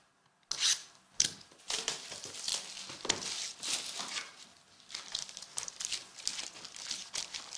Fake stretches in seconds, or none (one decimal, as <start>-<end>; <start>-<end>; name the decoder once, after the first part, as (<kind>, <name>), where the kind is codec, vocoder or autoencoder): 0.8-1.6 (vocoder, BigVGAN v2); 4.3-5.2